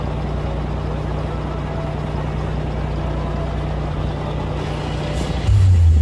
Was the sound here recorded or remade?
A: recorded